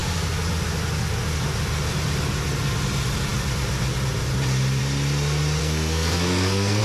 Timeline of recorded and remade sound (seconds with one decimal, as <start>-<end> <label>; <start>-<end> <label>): 0.0-5.6 recorded; 5.6-6.8 remade